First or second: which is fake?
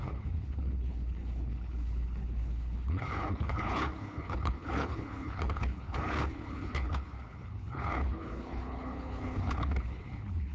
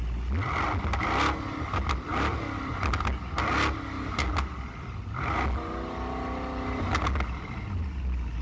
first